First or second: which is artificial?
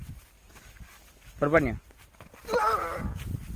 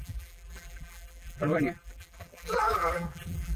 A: second